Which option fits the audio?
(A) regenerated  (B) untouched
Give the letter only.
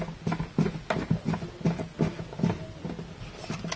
B